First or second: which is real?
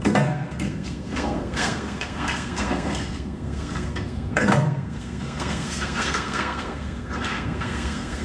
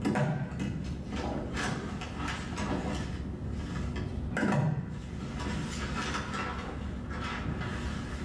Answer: second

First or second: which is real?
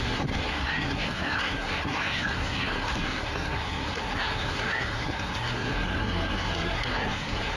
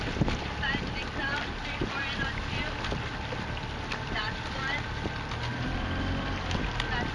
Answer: second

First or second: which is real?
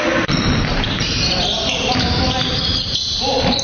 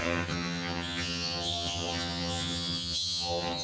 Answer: first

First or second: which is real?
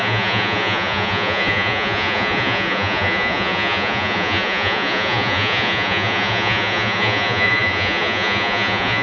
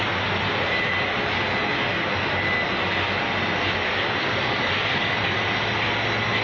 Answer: second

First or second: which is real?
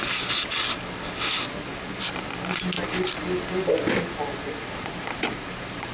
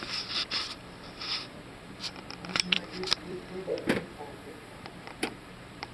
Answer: first